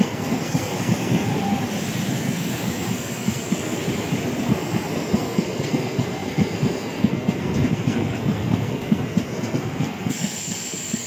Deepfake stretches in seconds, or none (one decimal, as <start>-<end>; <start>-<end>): 0.0-1.3; 2.1-3.8; 4.4-11.1